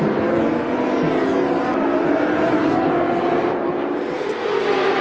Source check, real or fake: real